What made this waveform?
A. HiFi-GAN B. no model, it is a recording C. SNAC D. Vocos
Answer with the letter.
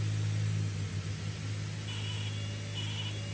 B